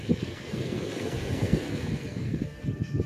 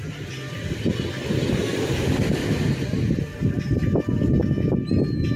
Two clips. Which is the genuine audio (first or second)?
second